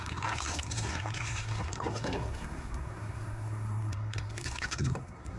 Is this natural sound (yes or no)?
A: no